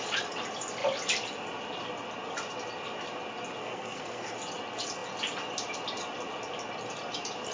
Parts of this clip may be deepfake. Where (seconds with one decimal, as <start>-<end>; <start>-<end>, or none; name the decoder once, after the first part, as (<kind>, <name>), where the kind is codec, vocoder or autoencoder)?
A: 3.6-4.3 (codec, SNAC)